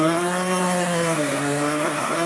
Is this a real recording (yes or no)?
no